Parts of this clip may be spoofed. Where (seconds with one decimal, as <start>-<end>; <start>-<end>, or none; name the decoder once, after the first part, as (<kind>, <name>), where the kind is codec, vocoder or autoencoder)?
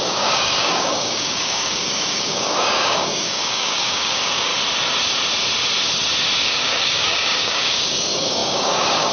0.0-4.5 (codec, DAC); 6.4-9.1